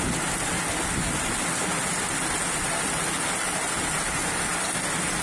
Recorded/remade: recorded